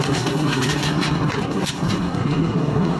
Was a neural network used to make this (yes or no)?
yes